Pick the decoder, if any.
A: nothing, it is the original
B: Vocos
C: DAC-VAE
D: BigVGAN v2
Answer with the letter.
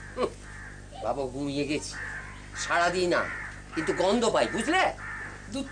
A